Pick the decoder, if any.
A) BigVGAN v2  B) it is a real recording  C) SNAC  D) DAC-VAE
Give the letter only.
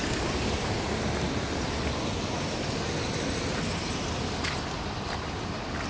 B